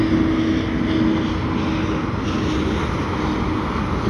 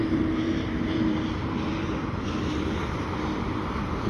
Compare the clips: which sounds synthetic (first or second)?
second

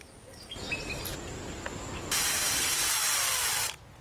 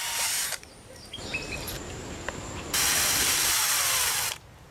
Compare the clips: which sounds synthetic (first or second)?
second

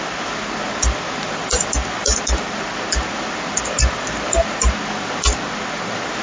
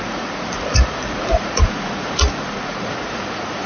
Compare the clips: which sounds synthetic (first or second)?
second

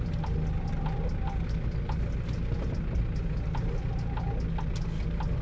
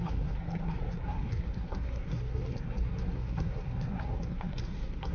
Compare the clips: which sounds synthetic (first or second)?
second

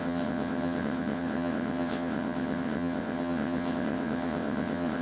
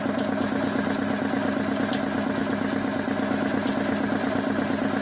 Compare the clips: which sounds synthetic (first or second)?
first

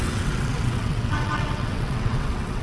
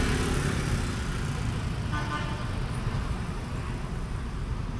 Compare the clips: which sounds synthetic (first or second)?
first